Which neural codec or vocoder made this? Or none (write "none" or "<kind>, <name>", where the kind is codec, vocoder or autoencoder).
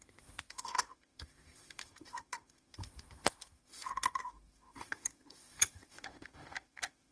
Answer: autoencoder, DAC-VAE